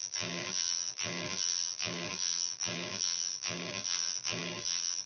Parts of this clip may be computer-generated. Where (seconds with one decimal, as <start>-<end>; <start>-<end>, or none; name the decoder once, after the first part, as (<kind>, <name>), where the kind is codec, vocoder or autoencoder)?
0.0-5.1 (vocoder, BigVGAN v2)